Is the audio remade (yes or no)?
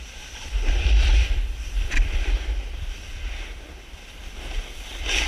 yes